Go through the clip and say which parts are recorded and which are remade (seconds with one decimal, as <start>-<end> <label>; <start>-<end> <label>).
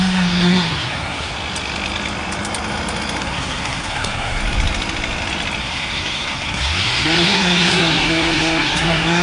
0.0-1.3 remade; 1.3-3.2 recorded; 3.2-4.4 remade; 4.4-5.6 recorded; 5.6-9.2 remade